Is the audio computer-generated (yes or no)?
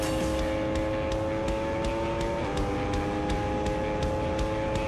no